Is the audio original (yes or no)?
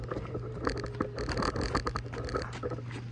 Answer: yes